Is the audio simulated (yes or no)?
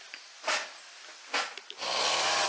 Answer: no